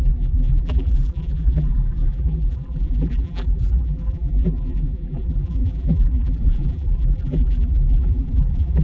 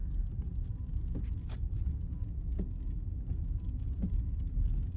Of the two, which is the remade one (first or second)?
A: first